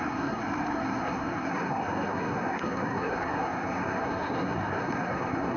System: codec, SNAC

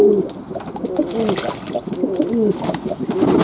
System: none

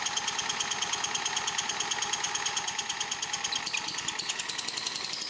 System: none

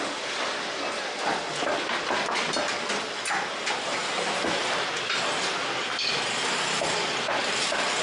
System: none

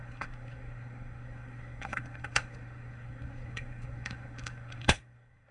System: codec, SNAC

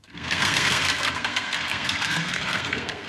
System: codec, SNAC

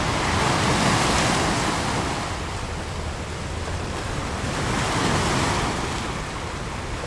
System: none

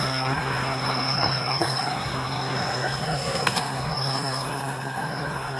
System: codec, SNAC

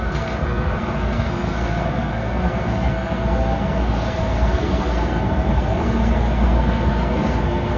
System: codec, SNAC